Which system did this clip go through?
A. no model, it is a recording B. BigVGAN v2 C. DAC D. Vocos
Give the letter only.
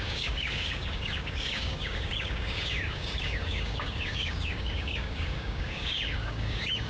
C